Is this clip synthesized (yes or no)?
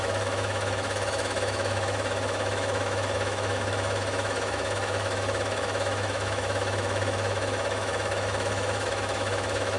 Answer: yes